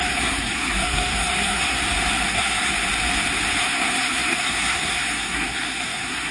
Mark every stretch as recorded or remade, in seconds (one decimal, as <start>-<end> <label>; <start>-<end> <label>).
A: 0.0-1.8 remade; 1.8-2.3 recorded; 2.3-2.7 remade; 2.7-3.6 recorded; 3.6-6.3 remade

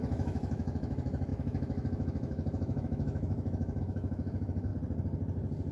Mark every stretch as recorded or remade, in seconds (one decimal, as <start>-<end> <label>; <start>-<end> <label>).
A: 0.0-4.7 remade; 4.7-5.7 recorded

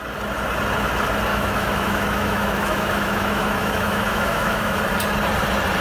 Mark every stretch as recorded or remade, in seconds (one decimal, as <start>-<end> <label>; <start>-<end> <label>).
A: 0.0-1.3 recorded; 1.3-4.8 remade; 4.8-5.8 recorded

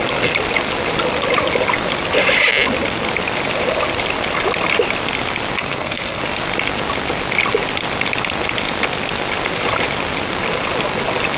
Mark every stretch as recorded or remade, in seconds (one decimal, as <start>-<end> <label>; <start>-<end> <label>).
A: 0.0-5.6 recorded; 5.6-6.2 remade; 6.2-11.4 recorded